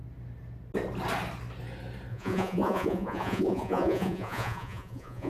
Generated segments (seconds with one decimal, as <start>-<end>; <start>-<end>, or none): 2.1-5.3